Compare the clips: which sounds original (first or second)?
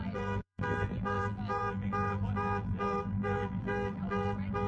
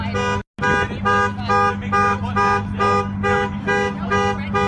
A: second